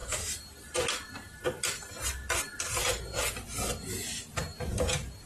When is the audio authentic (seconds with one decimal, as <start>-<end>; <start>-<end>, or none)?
0.0-5.3